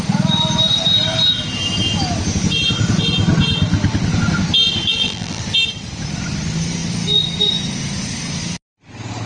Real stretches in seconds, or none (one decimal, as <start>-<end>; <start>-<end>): 0.0-4.9; 5.4-9.3